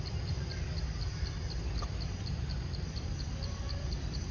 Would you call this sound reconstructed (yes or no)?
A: yes